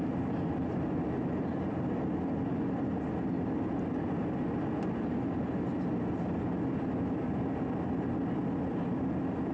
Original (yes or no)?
yes